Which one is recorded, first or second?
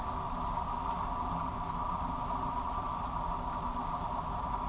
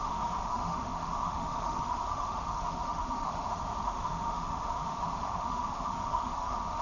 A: first